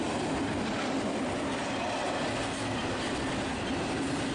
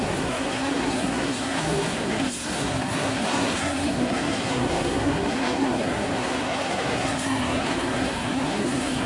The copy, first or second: second